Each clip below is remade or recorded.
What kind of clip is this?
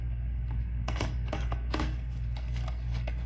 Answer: remade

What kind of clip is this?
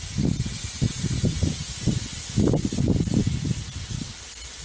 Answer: recorded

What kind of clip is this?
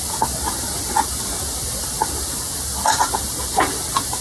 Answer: recorded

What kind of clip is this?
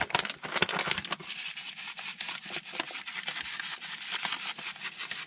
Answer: recorded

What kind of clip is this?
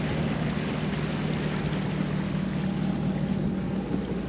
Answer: recorded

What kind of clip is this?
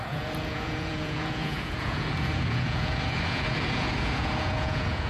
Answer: remade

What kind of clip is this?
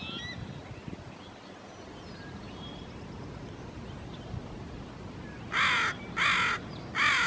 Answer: recorded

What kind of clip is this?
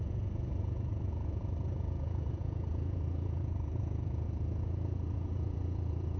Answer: remade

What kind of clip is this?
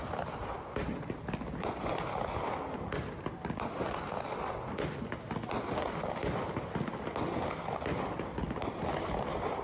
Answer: recorded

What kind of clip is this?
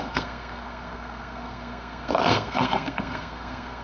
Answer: remade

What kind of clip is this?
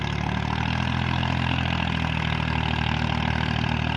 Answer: recorded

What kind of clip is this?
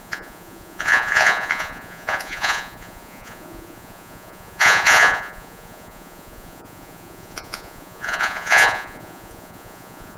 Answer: remade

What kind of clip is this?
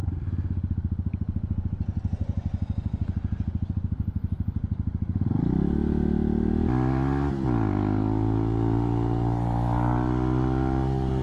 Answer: recorded